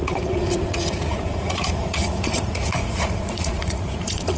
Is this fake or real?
fake